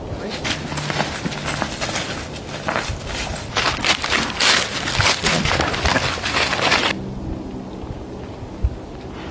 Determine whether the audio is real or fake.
real